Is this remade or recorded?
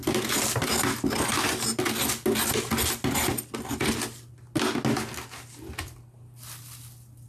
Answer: recorded